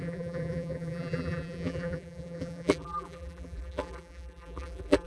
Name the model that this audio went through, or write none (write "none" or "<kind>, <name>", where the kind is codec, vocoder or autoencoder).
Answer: vocoder, BigVGAN v2